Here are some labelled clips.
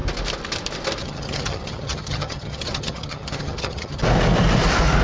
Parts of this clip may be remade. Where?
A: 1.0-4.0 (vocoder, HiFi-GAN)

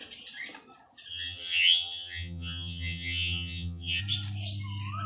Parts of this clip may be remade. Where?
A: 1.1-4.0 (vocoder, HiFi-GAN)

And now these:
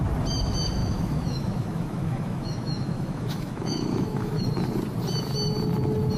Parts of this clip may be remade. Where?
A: 0.8-4.5 (autoencoder, DAC-VAE)

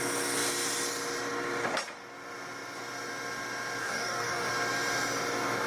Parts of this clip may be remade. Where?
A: 3.8-4.5 (codec, DAC)

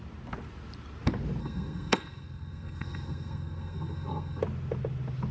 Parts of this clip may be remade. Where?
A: 1.4-4.4 (codec, SNAC)